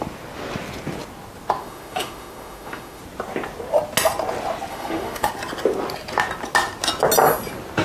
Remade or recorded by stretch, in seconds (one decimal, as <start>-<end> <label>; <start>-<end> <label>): 0.0-1.6 recorded; 1.6-3.0 remade; 3.0-4.7 recorded; 4.7-5.3 remade; 5.3-7.8 recorded